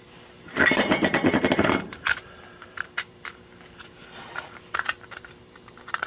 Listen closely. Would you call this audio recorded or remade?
remade